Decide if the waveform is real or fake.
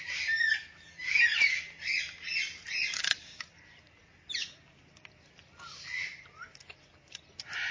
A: real